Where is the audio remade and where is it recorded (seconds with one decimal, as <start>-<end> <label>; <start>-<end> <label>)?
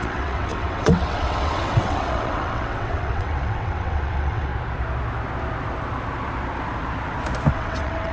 0.0-4.5 remade; 4.5-7.5 recorded; 7.5-8.1 remade